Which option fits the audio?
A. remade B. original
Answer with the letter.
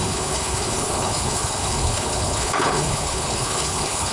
A